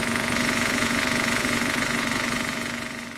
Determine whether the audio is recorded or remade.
remade